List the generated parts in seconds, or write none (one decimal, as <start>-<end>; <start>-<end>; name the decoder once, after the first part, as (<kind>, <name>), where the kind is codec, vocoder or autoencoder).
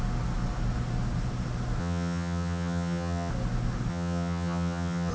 1.8-3.3 (vocoder, HiFi-GAN); 3.9-5.1